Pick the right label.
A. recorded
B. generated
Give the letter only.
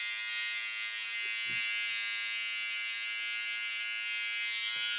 A